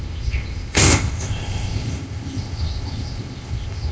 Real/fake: fake